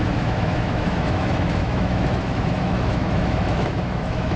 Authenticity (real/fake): fake